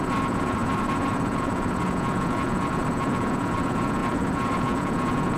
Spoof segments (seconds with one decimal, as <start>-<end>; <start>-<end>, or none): 0.0-5.4